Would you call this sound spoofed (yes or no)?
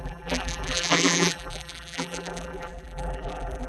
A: yes